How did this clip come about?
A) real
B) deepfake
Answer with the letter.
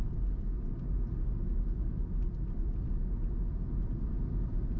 A